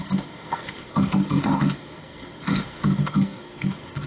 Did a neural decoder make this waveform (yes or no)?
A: yes